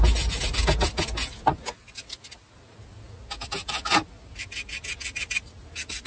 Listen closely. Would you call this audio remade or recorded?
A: recorded